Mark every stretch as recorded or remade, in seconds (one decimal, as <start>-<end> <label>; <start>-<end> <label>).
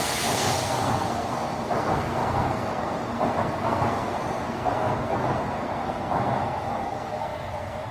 0.0-7.9 remade